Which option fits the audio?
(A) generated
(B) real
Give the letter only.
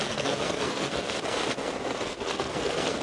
A